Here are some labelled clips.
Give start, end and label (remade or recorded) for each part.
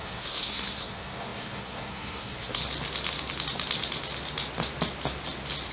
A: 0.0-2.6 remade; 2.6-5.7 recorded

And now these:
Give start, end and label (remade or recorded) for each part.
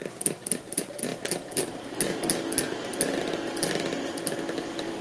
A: 0.0-5.0 recorded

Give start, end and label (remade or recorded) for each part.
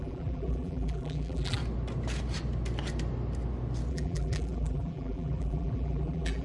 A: 0.0-1.6 remade; 1.6-3.9 recorded; 3.9-6.4 remade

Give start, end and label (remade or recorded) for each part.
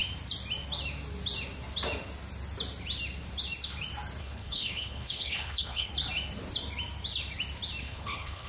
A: 0.0-4.2 recorded; 4.2-5.9 remade; 5.9-7.8 recorded; 7.8-8.5 remade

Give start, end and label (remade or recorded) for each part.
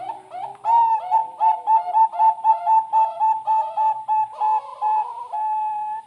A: 0.0-1.2 recorded; 1.2-2.5 remade; 2.5-4.7 recorded; 4.7-6.1 remade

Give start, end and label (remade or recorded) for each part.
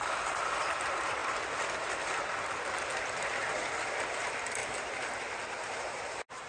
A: 0.0-1.2 remade; 1.2-3.9 recorded; 3.9-6.5 remade